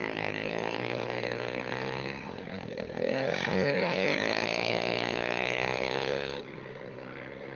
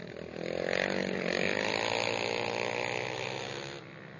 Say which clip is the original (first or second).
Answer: second